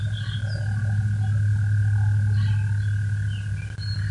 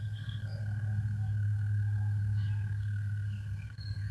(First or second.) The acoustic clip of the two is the first